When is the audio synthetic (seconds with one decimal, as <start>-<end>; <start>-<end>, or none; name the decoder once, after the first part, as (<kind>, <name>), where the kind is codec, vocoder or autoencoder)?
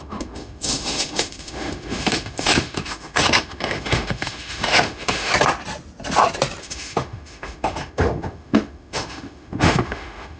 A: 0.0-5.3 (autoencoder, DAC-VAE); 6.6-10.4